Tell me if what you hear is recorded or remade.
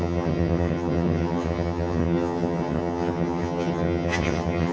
remade